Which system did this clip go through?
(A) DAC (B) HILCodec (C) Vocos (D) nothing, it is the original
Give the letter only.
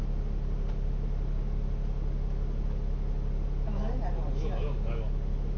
D